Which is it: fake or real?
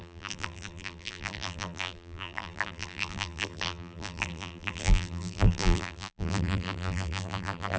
fake